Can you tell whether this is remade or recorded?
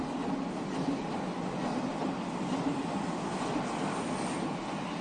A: recorded